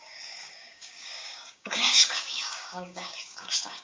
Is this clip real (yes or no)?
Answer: no